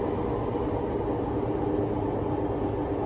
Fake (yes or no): no